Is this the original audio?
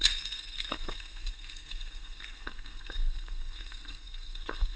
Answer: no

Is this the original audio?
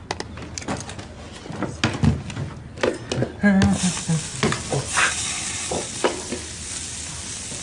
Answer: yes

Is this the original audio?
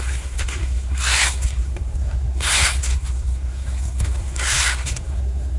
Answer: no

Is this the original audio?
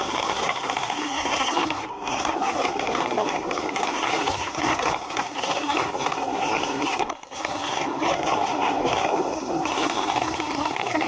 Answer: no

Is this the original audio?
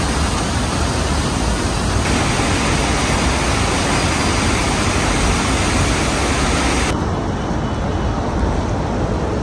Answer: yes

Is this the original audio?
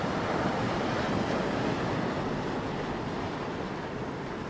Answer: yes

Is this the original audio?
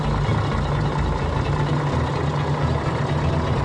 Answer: yes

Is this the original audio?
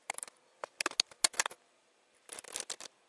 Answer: yes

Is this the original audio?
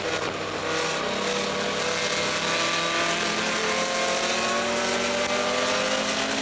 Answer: yes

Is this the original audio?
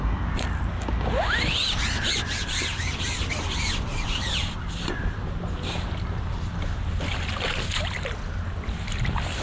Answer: yes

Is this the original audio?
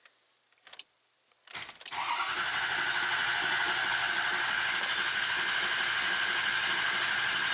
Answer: yes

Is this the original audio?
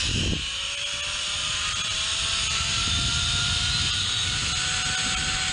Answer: yes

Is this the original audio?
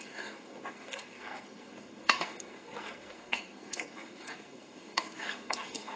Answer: no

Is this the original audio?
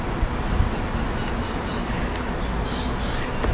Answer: yes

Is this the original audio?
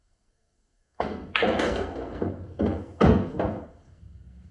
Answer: no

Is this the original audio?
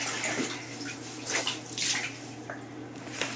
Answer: yes